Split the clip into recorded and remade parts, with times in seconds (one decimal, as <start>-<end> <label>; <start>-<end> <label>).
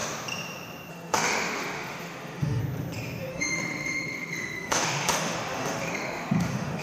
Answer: 0.0-0.9 recorded; 0.9-2.6 remade; 2.6-3.3 recorded; 3.3-6.8 remade